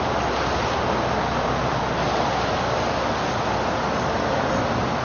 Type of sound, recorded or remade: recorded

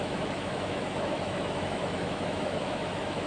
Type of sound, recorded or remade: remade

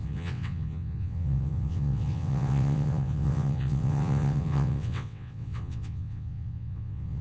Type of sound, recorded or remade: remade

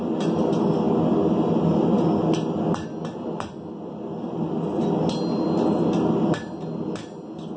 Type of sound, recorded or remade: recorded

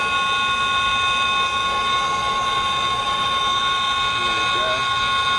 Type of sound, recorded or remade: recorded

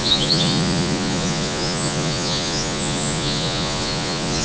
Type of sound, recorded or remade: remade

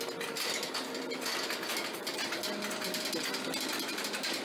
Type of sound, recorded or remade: recorded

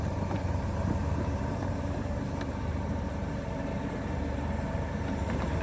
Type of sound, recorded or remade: remade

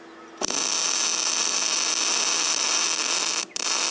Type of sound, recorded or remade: recorded